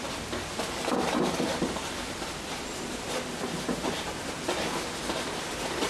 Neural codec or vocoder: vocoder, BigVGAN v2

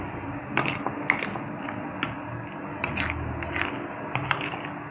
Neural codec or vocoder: none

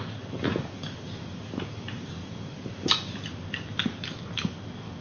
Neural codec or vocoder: none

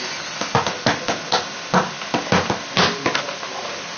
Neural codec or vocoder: none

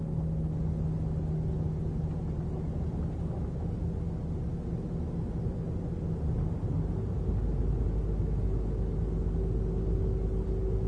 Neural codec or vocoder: none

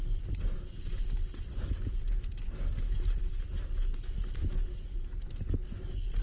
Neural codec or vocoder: none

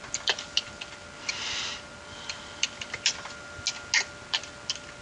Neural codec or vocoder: none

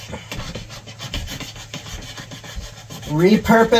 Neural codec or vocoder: none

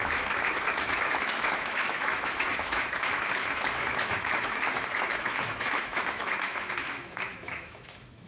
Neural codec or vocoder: autoencoder, DAC-VAE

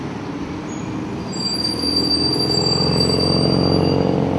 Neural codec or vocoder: none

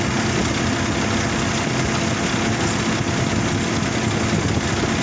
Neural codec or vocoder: none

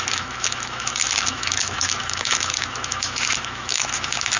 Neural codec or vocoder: autoencoder, DAC-VAE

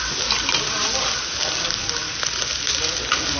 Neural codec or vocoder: none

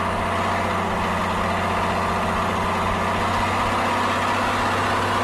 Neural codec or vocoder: none